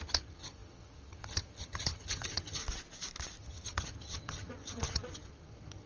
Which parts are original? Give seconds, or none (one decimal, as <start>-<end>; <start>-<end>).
2.6-3.4